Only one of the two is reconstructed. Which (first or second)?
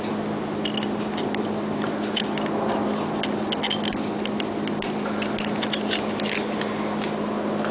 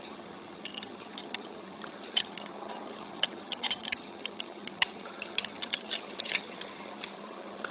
second